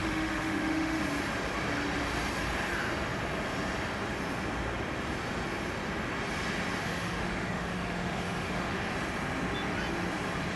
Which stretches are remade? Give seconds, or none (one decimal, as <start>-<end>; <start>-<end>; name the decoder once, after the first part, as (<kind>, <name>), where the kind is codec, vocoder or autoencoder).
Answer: 0.0-1.0 (autoencoder, DAC-VAE); 6.8-8.9